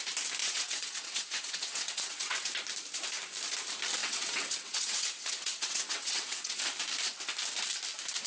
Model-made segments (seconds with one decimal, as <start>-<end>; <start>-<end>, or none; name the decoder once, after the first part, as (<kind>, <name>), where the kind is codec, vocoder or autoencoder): 0.4-2.5 (vocoder, WaveNeXt); 4.0-6.6